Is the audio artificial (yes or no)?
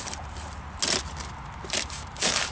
no